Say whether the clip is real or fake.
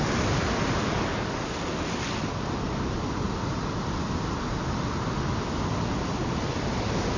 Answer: real